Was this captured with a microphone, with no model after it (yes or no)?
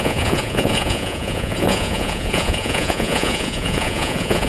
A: no